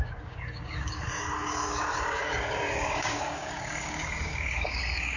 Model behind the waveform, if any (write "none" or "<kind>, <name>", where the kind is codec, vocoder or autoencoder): codec, DAC